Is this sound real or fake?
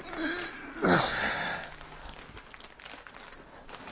real